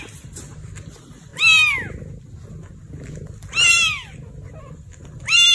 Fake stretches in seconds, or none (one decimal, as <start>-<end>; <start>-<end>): 0.0-1.3; 4.6-5.5